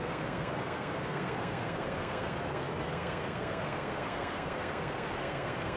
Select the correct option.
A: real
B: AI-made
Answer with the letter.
B